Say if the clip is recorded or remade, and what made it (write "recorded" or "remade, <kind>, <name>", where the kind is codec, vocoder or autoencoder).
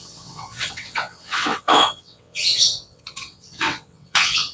remade, vocoder, WaveNeXt